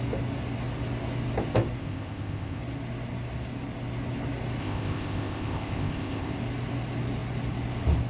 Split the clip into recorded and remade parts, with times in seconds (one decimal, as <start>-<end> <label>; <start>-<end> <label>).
0.0-1.8 recorded; 1.8-2.6 remade; 2.6-4.6 recorded; 4.6-6.3 remade; 6.3-8.1 recorded